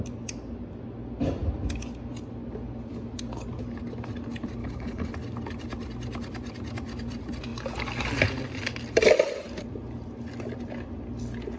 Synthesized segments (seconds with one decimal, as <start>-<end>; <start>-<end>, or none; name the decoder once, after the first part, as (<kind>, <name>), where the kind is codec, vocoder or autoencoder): 4.6-5.1 (codec, HILCodec)